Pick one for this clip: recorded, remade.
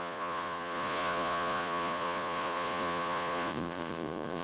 remade